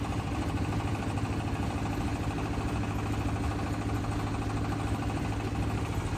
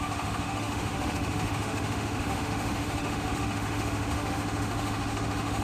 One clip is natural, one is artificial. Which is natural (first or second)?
first